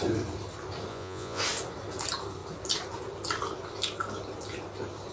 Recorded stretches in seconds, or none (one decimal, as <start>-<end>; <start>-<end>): 0.0-0.9; 1.4-5.1